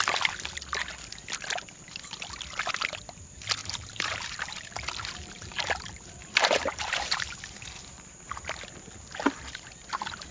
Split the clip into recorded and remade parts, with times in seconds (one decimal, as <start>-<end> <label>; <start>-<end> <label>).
0.0-3.6 recorded; 3.6-7.3 remade; 7.3-10.3 recorded